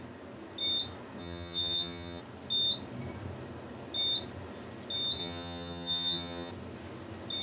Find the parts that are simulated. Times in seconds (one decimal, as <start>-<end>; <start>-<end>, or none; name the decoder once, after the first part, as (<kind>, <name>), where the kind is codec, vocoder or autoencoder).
1.2-2.2 (vocoder, HiFi-GAN); 5.2-6.5